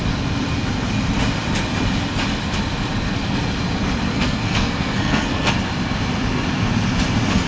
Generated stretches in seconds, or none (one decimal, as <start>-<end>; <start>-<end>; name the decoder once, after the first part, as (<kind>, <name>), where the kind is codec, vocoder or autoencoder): 4.1-5.5 (codec, SNAC)